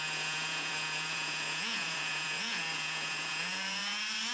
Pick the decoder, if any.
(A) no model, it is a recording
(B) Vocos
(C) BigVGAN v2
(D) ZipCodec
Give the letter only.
B